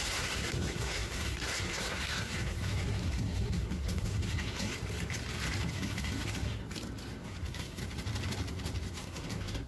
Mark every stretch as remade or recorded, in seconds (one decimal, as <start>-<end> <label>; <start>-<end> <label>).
0.0-4.7 remade; 4.7-5.7 recorded; 5.7-6.6 remade; 6.6-7.2 recorded; 7.2-7.8 remade; 7.8-8.9 recorded; 8.9-9.7 remade